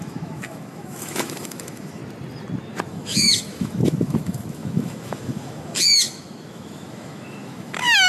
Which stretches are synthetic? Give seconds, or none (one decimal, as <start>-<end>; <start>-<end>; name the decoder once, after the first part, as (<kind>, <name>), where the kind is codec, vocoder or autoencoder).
0.0-2.0 (autoencoder, DAC-VAE); 2.9-8.1